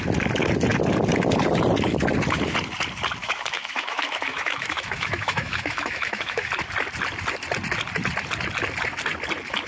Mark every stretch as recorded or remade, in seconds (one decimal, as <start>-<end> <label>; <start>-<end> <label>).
0.0-3.2 recorded; 3.2-6.5 remade; 6.5-9.7 recorded